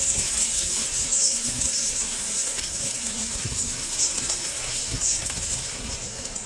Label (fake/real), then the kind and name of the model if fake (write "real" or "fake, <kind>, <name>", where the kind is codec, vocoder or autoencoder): fake, codec, SNAC